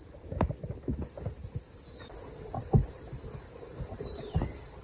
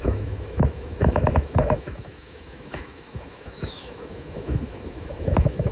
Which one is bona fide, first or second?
first